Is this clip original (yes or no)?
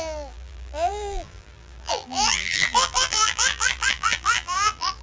no